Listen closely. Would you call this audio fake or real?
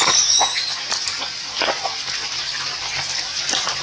real